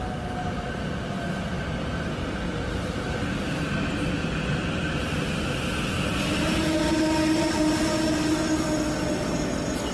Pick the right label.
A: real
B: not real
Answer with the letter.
A